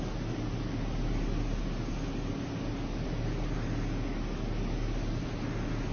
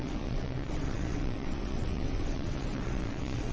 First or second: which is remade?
second